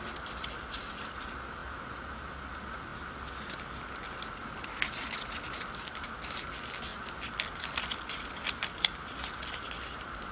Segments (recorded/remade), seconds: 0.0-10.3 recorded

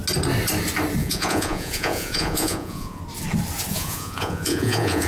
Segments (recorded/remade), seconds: 0.0-1.0 recorded; 1.0-3.0 remade; 3.0-3.7 recorded; 3.7-5.1 remade

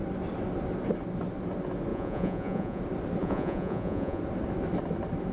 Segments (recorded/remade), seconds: 0.0-1.9 recorded; 1.9-2.8 remade; 2.8-3.2 recorded; 3.2-4.2 remade; 4.2-5.3 recorded